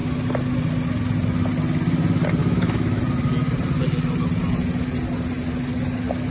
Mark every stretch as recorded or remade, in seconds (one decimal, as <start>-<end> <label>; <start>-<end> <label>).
0.0-2.4 recorded; 2.4-3.0 remade; 3.0-6.3 recorded